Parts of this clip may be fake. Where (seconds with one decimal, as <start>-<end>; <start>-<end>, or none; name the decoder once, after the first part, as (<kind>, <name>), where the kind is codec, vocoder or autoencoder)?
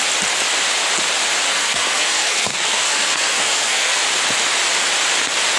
1.5-4.0 (codec, SNAC)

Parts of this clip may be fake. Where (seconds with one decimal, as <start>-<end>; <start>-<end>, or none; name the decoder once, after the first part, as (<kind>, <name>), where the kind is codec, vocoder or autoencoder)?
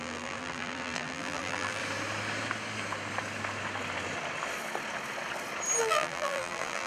0.0-1.8 (vocoder, BigVGAN v2); 5.8-6.9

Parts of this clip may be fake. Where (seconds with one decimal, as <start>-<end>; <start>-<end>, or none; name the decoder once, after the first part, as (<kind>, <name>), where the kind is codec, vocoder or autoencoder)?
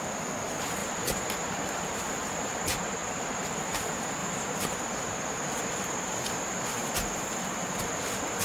0.8-2.3 (vocoder, BigVGAN v2); 3.0-3.8; 4.2-5.6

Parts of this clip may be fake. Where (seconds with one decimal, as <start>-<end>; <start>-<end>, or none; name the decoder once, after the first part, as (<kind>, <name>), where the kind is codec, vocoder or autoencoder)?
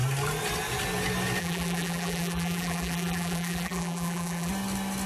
1.4-4.5 (vocoder, BigVGAN v2)